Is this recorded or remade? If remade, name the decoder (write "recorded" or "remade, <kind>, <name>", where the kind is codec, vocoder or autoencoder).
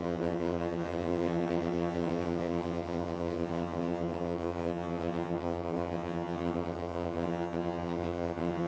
remade, vocoder, HiFi-GAN